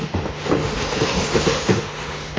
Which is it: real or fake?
fake